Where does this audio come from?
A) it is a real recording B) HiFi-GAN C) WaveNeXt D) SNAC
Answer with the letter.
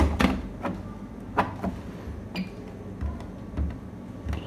A